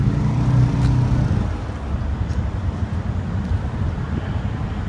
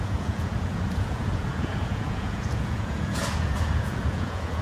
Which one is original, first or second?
first